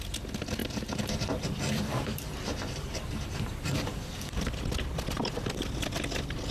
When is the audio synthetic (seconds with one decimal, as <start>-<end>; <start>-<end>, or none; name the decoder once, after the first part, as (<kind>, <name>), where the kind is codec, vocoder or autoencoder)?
0.6-4.5 (vocoder, BigVGAN v2)